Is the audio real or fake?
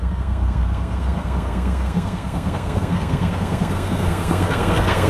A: fake